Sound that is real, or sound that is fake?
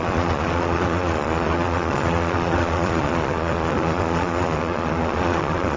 fake